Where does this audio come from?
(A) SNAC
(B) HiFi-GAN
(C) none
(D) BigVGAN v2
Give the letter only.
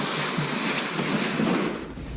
C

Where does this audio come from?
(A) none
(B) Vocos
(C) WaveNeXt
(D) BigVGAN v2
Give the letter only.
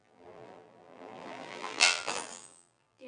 D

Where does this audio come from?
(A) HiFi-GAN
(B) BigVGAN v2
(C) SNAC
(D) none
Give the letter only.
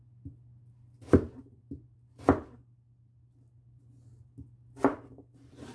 D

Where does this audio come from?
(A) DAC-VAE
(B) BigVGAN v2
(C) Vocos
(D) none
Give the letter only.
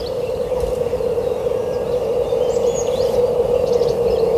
D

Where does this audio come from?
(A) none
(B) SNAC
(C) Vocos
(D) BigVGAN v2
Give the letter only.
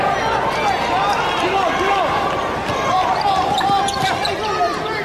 A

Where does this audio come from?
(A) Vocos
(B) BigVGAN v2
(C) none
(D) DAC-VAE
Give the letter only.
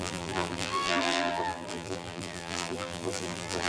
B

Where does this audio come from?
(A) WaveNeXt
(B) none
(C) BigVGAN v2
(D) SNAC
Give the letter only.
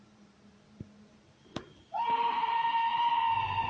C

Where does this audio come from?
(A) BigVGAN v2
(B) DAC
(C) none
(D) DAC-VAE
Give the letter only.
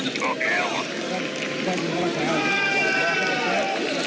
C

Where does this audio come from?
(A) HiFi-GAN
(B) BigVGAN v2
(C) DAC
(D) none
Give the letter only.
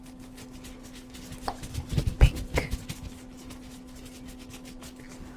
D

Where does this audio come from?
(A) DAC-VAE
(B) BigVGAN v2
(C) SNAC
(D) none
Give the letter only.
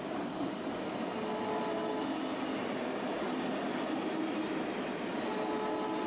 D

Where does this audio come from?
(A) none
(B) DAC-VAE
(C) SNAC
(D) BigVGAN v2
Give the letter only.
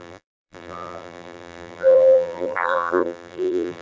D